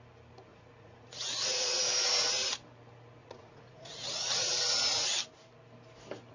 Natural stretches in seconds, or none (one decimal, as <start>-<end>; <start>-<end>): 0.0-0.5; 1.8-3.2; 4.5-6.3